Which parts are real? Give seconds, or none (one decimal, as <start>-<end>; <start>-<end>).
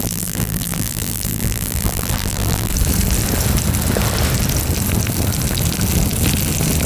2.7-6.9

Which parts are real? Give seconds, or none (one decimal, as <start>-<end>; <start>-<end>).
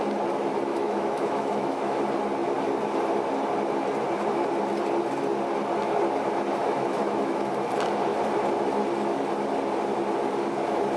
0.0-0.7; 2.0-6.6; 7.5-11.0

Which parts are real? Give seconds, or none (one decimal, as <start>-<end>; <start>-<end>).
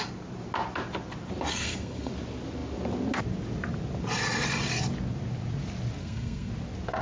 0.0-1.5; 2.1-6.0; 6.5-7.0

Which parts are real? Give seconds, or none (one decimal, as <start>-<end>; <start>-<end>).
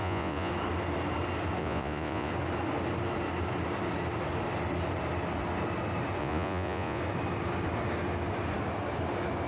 0.5-1.6; 2.3-6.2; 7.0-9.5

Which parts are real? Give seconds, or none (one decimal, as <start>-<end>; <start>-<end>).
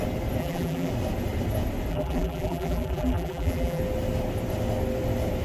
0.0-0.4; 0.9-1.9; 3.8-5.4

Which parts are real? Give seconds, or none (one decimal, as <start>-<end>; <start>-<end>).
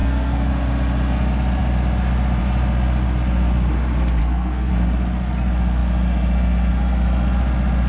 0.5-4.2; 4.7-7.9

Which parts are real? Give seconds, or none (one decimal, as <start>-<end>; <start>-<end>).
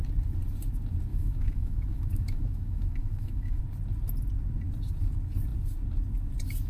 0.0-1.1; 3.6-6.7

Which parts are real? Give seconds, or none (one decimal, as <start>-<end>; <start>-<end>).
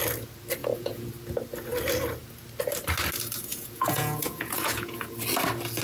0.0-0.6; 1.1-3.5; 5.1-5.8